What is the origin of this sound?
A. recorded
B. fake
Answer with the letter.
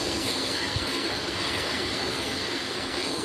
B